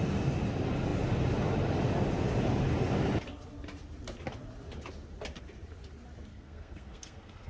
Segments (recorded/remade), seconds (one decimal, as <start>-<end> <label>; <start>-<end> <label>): 0.0-6.3 recorded; 6.3-7.5 remade